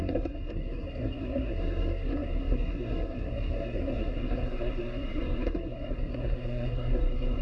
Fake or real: fake